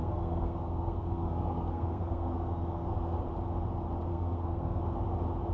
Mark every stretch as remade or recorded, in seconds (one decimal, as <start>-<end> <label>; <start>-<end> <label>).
0.0-3.3 remade; 3.3-4.1 recorded; 4.1-4.8 remade; 4.8-5.5 recorded

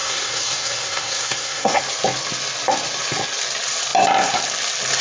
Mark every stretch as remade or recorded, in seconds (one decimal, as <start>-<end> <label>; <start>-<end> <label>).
0.0-1.8 remade; 1.8-5.0 recorded

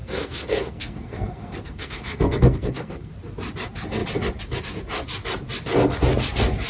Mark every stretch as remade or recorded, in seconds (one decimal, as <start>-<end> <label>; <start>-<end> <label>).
0.0-3.1 remade; 3.1-6.7 recorded

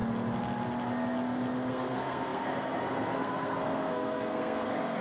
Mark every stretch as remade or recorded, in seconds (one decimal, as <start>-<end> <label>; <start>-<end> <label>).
0.0-1.7 recorded; 1.7-5.0 remade

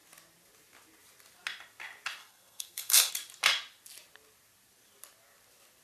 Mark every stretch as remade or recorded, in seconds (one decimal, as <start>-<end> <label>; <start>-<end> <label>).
0.0-2.2 recorded; 2.2-3.1 remade; 3.1-5.8 recorded

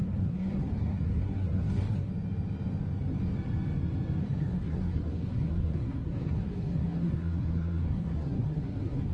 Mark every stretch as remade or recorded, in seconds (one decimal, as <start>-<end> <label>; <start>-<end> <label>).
0.0-2.1 remade; 2.1-4.2 recorded; 4.2-9.1 remade